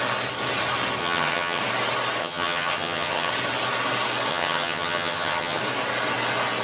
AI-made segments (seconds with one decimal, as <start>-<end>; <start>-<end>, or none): 1.0-1.6; 2.2-3.3; 4.3-5.6

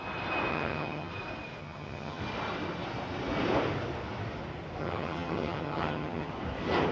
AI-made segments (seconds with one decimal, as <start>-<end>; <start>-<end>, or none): 0.5-1.1; 1.6-2.2; 4.8-6.3

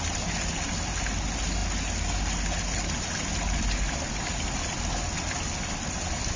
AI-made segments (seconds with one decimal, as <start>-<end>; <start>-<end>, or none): none

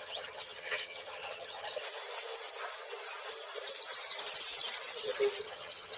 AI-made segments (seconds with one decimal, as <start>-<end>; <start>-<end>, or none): 0.0-1.8; 5.4-6.0

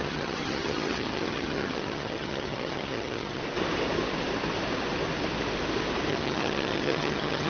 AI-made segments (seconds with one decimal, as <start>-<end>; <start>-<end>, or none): 0.0-3.4; 6.1-7.5

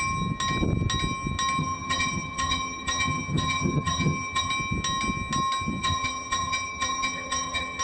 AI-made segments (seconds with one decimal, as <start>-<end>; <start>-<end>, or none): 1.6-4.5; 5.8-7.8

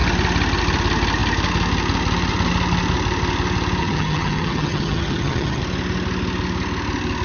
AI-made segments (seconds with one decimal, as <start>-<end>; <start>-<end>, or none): 3.8-5.6